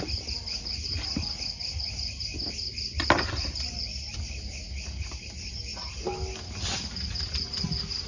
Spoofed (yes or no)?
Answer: no